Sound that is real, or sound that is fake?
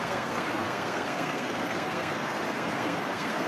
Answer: fake